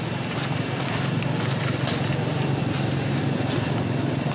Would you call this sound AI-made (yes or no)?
no